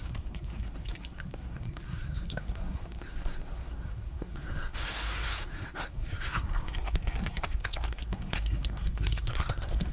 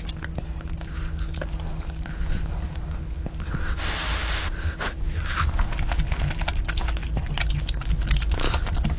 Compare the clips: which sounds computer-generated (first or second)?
first